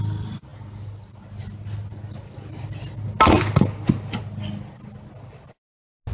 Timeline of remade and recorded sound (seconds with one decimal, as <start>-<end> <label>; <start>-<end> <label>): 0.0-6.1 recorded